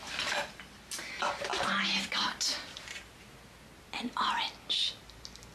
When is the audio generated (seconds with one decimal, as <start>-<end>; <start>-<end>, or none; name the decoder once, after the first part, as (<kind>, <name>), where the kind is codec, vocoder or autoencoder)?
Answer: none